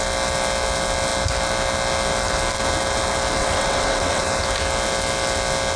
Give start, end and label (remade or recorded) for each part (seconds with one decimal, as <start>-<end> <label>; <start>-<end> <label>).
0.0-3.4 recorded; 3.4-4.2 remade; 4.2-5.8 recorded